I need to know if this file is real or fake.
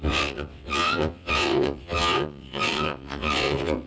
fake